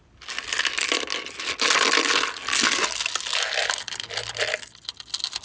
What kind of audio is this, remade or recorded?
recorded